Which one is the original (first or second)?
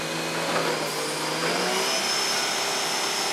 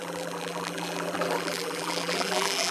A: first